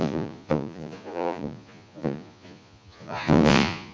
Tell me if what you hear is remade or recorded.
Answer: remade